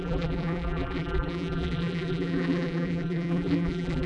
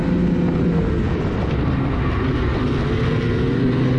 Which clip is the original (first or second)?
second